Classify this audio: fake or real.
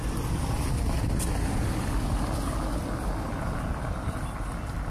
real